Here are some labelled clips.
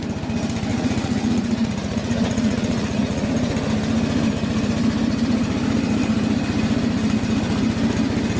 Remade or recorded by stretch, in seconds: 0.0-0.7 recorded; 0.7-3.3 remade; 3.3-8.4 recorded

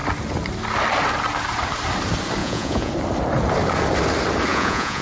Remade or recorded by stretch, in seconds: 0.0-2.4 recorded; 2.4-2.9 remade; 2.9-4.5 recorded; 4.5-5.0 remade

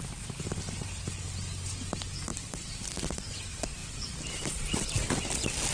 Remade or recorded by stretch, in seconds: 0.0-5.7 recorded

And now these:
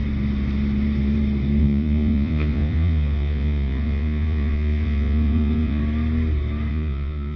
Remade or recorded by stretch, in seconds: 0.0-1.6 recorded; 1.6-5.8 remade; 5.8-6.7 recorded; 6.7-7.4 remade